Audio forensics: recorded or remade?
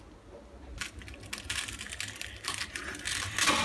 recorded